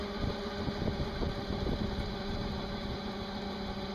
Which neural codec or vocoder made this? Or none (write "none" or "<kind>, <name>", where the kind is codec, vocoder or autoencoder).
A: none